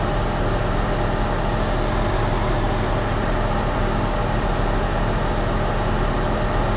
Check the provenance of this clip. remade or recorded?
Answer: recorded